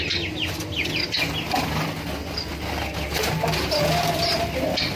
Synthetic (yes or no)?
no